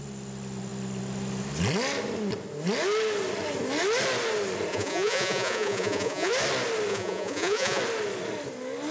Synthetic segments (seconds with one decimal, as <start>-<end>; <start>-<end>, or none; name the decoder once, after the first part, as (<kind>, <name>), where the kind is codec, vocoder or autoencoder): 4.7-6.3 (vocoder, Vocos); 6.9-7.8